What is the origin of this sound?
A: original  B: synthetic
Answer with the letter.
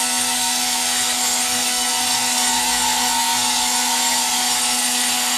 B